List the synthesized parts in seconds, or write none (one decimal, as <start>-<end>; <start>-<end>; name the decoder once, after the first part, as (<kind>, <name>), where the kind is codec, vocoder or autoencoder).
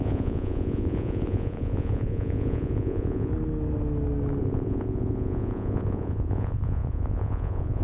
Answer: 0.0-3.3 (vocoder, Vocos); 4.4-7.8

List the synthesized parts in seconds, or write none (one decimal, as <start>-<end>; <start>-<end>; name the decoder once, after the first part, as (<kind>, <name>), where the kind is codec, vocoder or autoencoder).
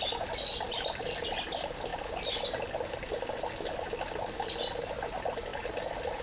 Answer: none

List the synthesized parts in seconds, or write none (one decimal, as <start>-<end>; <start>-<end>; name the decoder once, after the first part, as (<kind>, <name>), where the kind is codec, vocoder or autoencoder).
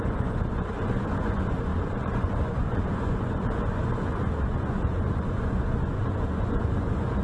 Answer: 0.0-7.2 (vocoder, Vocos)